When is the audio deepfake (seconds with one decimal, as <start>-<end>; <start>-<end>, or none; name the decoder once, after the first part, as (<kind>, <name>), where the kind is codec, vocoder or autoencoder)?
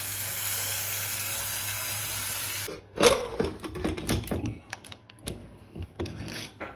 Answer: 0.0-2.0 (codec, SNAC); 2.8-3.3; 4.4-6.8